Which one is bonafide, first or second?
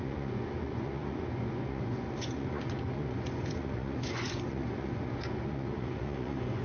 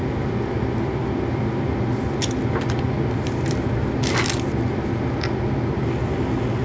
second